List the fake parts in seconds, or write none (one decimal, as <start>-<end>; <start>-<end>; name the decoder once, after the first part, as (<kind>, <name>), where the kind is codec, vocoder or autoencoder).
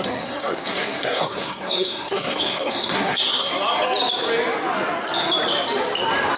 0.0-3.5 (codec, SNAC)